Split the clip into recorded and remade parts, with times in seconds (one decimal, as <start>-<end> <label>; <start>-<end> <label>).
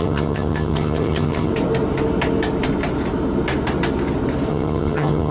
0.0-1.5 remade; 1.5-4.5 recorded; 4.5-5.3 remade